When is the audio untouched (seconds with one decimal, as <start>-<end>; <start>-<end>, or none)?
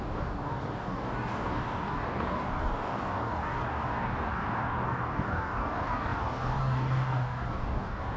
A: none